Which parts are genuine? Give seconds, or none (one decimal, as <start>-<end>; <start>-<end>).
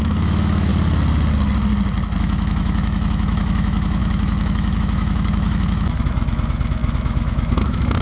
0.7-2.2